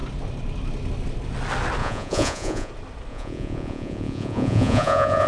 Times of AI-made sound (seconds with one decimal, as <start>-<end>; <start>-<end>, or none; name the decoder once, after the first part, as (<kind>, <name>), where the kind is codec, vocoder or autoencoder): 1.8-2.7 (vocoder, Vocos); 3.1-5.3